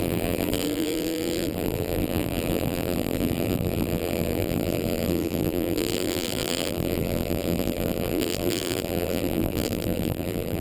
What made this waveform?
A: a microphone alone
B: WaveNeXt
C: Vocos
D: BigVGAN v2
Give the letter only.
D